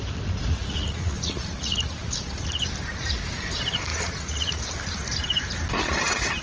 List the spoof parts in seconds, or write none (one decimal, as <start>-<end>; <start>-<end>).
0.6-2.5; 3.9-4.6